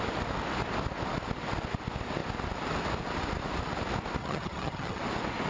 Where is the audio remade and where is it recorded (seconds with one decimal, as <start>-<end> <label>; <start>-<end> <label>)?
0.0-4.2 recorded; 4.2-5.0 remade; 5.0-5.5 recorded